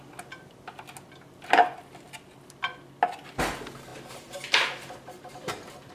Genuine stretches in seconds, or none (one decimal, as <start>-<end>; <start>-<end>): 0.0-5.9